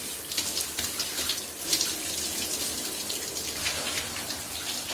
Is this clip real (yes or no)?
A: yes